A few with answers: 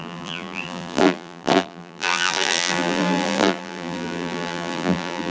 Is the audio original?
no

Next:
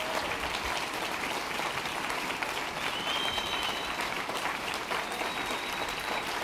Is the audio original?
no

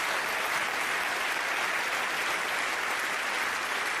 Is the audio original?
yes